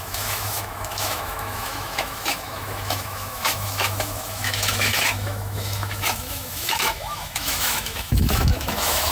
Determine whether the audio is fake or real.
fake